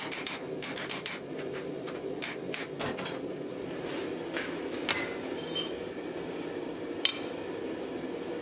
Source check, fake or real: real